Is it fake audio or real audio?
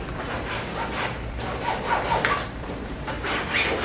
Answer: real